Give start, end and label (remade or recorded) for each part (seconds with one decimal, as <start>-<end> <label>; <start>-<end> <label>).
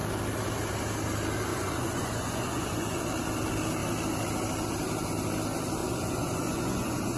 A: 0.0-1.5 recorded; 1.5-3.0 remade; 3.0-5.8 recorded; 5.8-7.2 remade